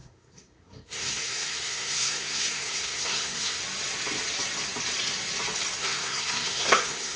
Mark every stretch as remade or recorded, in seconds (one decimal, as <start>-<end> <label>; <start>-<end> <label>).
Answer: 0.0-3.6 remade; 3.6-5.8 recorded; 5.8-7.2 remade